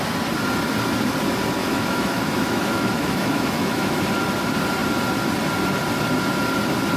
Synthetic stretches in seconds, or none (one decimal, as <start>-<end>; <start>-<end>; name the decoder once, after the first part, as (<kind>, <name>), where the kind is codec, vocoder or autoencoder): 1.6-4.0 (autoencoder, DAC-VAE)